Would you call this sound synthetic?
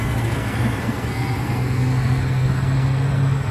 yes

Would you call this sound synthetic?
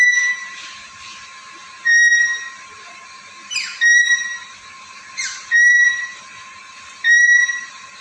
yes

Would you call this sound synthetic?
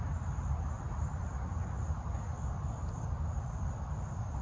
no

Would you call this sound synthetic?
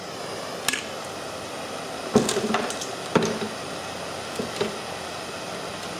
no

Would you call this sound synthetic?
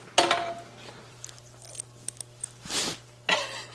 no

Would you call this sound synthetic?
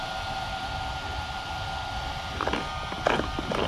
no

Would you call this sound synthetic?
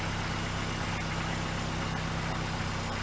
no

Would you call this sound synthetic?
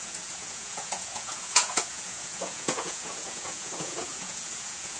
yes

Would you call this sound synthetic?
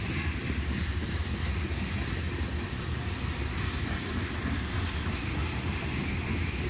no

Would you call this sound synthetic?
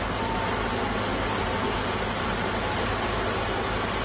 no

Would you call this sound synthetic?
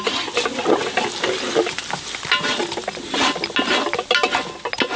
no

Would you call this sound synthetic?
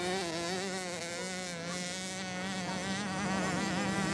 no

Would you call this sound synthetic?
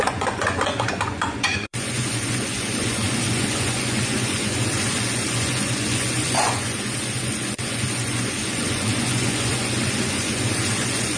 yes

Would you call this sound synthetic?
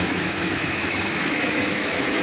yes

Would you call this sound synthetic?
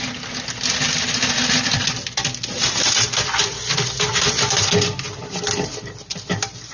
no